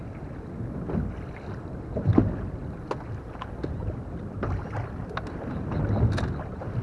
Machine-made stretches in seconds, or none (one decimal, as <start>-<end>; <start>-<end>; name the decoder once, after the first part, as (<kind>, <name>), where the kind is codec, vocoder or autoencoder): none